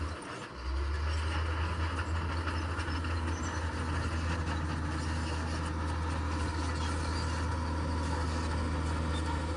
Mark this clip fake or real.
real